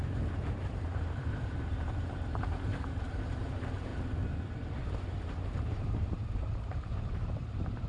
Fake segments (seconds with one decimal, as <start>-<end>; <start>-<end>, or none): 0.0-3.9; 5.1-7.9